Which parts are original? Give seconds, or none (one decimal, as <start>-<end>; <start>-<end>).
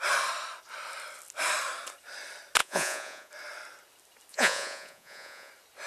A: 0.0-2.6; 3.3-4.3; 5.5-5.9